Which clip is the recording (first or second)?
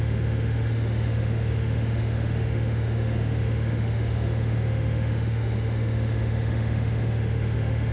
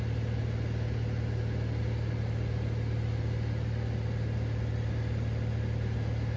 second